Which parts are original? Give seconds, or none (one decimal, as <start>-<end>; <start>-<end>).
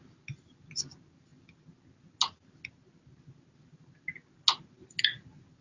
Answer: 0.0-5.6